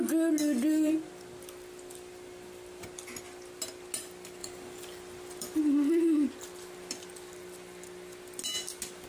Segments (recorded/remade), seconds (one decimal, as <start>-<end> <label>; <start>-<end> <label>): 0.0-4.4 recorded; 4.4-5.6 remade; 5.6-9.1 recorded